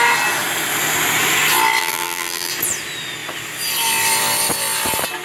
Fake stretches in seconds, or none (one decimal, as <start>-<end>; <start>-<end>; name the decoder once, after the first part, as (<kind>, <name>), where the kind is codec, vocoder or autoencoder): 1.8-2.5 (vocoder, BigVGAN v2)